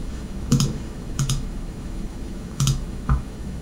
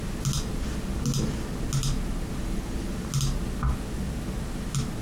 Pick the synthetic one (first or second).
first